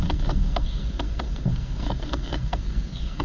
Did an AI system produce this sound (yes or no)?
yes